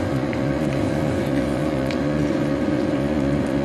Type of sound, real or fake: fake